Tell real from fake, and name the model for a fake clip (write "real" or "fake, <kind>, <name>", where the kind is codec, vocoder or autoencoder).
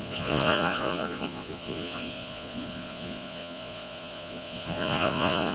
fake, vocoder, Vocos